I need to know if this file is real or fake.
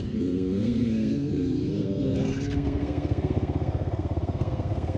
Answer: fake